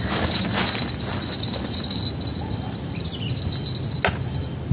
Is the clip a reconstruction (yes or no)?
no